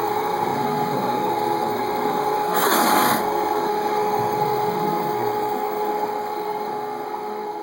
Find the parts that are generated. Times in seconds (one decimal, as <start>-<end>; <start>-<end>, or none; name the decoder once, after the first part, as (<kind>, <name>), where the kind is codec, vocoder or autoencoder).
0.0-7.6 (codec, SNAC)